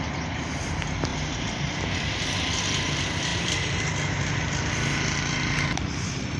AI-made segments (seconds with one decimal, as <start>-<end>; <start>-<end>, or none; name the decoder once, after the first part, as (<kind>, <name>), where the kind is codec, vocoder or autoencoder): 1.1-1.6 (vocoder, BigVGAN v2); 3.3-3.8